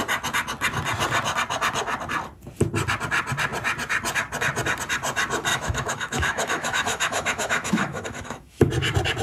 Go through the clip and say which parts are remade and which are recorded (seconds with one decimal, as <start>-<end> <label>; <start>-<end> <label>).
0.0-5.5 recorded; 5.5-8.7 remade; 8.7-9.2 recorded